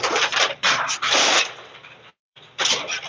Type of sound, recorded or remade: remade